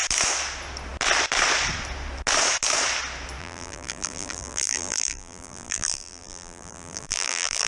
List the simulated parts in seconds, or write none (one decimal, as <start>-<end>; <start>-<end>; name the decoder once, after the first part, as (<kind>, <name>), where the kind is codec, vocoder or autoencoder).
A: 3.4-7.7 (vocoder, BigVGAN v2)